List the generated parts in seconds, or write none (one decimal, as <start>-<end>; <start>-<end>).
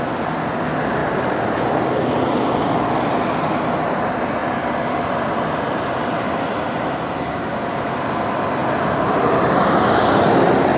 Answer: 1.0-2.2; 4.4-5.0; 8.6-9.4